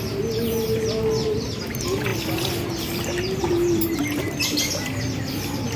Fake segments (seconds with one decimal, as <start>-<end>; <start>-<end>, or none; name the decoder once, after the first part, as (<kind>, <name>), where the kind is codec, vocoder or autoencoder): none